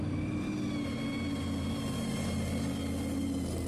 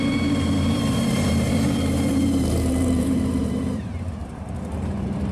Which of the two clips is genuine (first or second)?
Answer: first